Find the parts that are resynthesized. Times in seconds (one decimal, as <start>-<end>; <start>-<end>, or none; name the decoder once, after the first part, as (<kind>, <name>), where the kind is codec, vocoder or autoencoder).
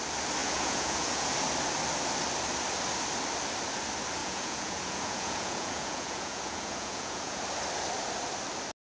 0.4-1.3 (vocoder, Vocos); 4.2-7.4